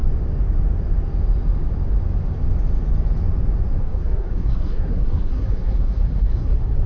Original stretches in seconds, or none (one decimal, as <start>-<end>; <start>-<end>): 0.0-3.8